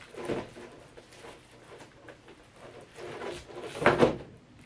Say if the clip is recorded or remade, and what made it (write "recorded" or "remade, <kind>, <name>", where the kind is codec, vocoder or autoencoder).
recorded